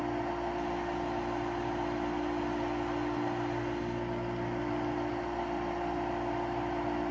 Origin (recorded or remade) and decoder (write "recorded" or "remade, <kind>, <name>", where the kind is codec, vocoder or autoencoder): recorded